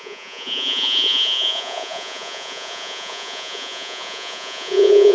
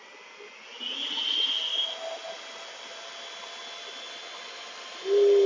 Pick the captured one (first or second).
second